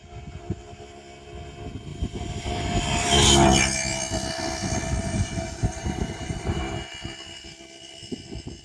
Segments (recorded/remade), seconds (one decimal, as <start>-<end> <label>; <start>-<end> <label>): 0.0-1.9 recorded; 1.9-2.8 remade; 2.8-5.0 recorded; 5.0-6.9 remade; 6.9-8.6 recorded